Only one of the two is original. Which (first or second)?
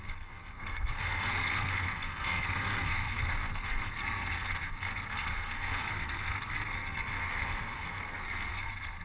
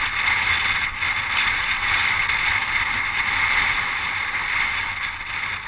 second